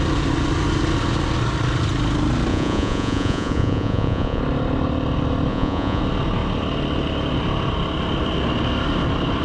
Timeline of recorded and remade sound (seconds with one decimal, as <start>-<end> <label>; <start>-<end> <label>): 0.0-2.5 recorded; 2.5-4.4 remade; 4.4-5.5 recorded; 5.5-6.0 remade; 6.0-9.4 recorded